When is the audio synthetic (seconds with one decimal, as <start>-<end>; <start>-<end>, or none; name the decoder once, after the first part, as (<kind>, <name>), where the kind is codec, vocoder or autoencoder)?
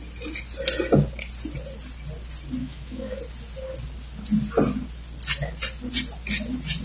2.6-3.2 (autoencoder, DAC-VAE)